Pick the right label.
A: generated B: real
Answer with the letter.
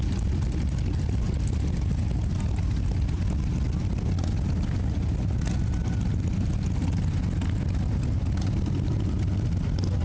B